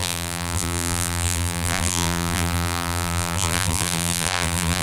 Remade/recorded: remade